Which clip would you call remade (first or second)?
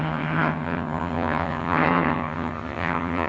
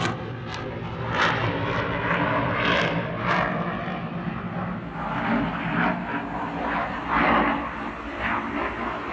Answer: first